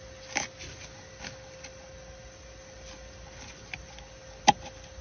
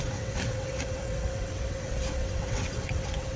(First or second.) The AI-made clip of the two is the second